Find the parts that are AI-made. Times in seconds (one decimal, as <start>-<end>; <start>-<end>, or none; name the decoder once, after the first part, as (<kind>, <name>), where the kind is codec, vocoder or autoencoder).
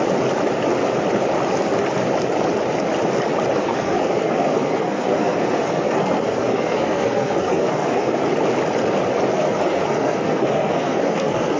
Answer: 3.6-8.2 (codec, SNAC); 9.3-11.6